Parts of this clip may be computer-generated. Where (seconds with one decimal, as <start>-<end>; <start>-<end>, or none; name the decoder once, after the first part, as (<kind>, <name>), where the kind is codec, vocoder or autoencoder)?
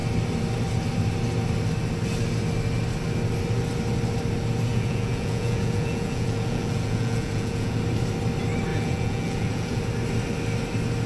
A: 4.7-7.8 (vocoder, Vocos); 8.7-9.8